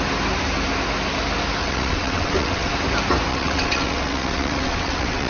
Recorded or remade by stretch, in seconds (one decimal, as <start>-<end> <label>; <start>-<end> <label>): 0.0-1.6 recorded; 1.6-2.7 remade; 2.7-3.3 recorded; 3.3-5.3 remade